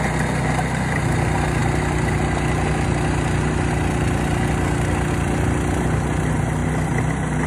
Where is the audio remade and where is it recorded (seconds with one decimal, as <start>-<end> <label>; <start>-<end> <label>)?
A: 0.0-7.5 recorded